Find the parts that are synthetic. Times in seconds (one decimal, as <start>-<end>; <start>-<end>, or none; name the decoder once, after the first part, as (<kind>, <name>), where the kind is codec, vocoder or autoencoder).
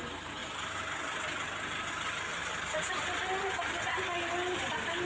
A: 2.4-3.1 (vocoder, BigVGAN v2)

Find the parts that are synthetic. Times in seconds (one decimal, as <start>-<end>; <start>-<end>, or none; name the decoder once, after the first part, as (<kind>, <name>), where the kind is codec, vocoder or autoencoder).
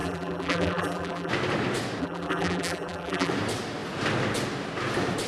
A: 0.0-1.3 (vocoder, BigVGAN v2); 2.0-3.3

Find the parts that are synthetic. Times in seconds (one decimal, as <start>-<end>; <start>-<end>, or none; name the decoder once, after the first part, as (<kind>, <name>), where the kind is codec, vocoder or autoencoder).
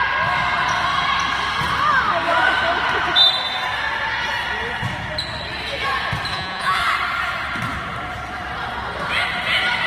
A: 6.3-6.8 (vocoder, Vocos)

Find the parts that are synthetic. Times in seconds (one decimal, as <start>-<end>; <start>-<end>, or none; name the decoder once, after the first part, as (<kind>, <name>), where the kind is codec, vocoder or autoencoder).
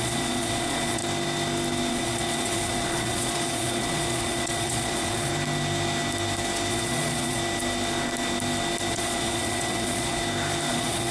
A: 0.0-1.0 (vocoder, Vocos); 1.9-5.3; 6.7-7.4; 8.9-10.2; 10.7-11.1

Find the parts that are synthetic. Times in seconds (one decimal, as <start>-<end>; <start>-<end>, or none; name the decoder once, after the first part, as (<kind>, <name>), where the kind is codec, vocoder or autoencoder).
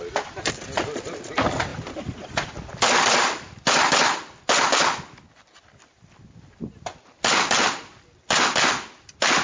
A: none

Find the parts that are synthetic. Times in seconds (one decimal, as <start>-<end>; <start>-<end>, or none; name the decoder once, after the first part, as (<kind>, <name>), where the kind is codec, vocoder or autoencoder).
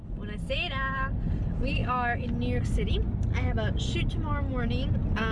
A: none